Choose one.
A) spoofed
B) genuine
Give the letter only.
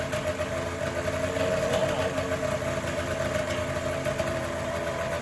B